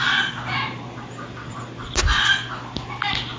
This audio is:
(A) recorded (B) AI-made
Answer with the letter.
A